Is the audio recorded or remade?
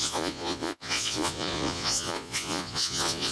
remade